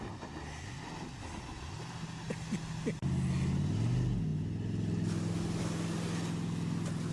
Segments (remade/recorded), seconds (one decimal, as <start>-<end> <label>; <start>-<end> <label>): 0.0-7.1 recorded